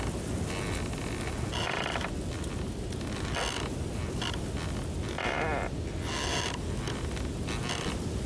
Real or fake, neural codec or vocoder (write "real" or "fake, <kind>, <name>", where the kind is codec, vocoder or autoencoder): real